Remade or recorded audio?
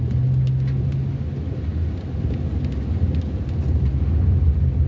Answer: recorded